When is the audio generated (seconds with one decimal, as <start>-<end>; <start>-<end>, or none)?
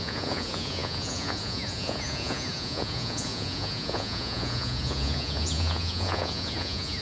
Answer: 0.0-7.0